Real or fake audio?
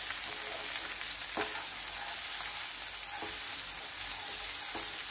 real